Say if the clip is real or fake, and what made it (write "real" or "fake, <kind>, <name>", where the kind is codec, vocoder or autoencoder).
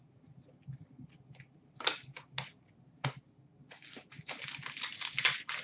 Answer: real